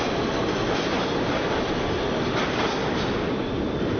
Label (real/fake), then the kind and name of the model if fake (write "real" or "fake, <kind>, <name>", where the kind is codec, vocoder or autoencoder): real